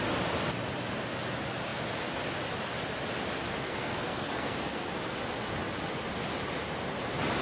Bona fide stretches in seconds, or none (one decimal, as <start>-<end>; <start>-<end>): 0.0-3.5; 4.9-7.4